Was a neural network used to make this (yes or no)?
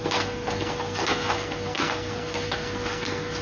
yes